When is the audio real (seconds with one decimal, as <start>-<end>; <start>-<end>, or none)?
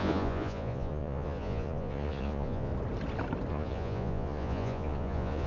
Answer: 2.7-3.5